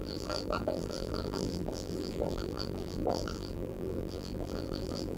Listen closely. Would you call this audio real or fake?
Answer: fake